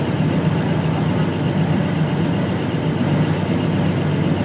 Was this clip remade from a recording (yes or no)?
no